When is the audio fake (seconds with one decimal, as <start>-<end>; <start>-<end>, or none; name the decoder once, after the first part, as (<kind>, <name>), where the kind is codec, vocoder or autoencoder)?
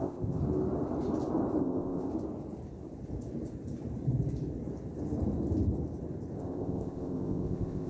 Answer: 0.0-0.4 (codec, ZipCodec); 1.6-2.1; 6.4-7.9